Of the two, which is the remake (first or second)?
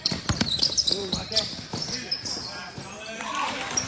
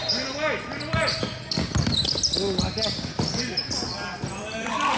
first